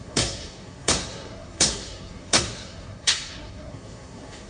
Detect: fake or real fake